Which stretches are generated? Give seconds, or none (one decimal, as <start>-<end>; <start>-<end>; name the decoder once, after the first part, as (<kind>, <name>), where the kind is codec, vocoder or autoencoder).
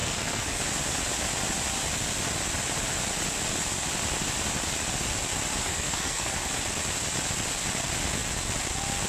0.0-0.6 (codec, SNAC); 5.6-6.5